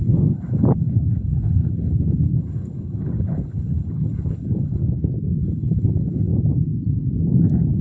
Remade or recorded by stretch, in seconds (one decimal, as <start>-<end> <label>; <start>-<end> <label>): 0.0-4.8 remade; 4.8-5.4 recorded; 5.4-6.3 remade; 6.3-7.8 recorded

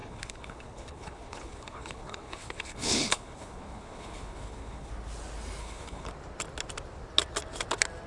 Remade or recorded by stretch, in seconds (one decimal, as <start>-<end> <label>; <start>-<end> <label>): 0.0-4.9 remade; 4.9-5.6 recorded; 5.6-6.1 remade; 6.1-8.1 recorded

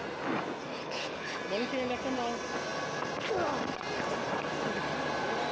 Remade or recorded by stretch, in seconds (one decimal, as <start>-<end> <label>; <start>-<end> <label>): 0.0-0.7 recorded; 0.7-1.4 remade; 1.4-5.5 recorded

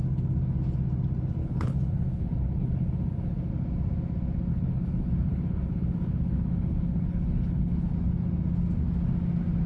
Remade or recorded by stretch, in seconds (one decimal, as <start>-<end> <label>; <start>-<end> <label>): 0.0-1.4 recorded; 1.4-3.5 remade; 3.5-4.5 recorded; 4.5-7.9 remade; 7.9-9.7 recorded

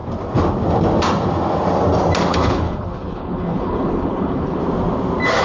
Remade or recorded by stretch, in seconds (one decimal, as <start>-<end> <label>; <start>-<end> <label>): 0.0-2.3 recorded; 2.3-4.6 remade; 4.6-5.4 recorded

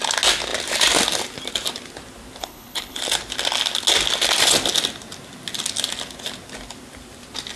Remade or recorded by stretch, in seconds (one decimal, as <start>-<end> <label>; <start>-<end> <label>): 0.0-2.4 recorded; 2.4-3.0 remade; 3.0-7.6 recorded

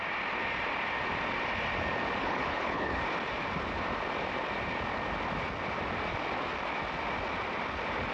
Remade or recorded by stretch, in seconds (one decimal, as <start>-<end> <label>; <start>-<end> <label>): 0.0-2.2 recorded; 2.2-3.0 remade; 3.0-8.1 recorded